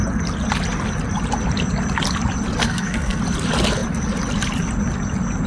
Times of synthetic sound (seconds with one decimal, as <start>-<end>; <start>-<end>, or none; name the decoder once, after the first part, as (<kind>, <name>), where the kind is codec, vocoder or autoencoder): 2.6-3.2 (codec, SNAC)